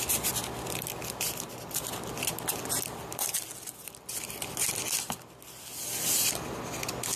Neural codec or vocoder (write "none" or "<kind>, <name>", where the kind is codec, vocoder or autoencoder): none